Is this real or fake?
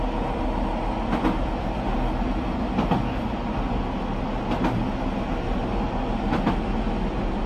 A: real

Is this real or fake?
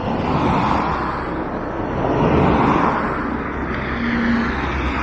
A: real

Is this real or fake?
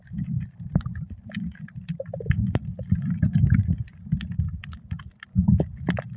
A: real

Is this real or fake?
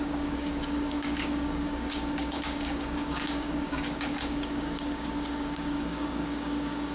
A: fake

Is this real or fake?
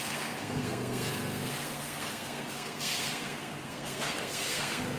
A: fake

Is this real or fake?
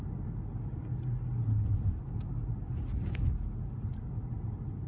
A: real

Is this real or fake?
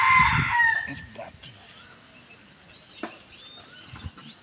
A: real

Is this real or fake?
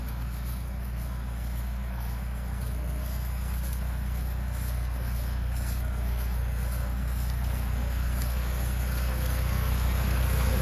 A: fake